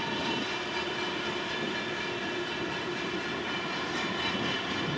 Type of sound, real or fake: real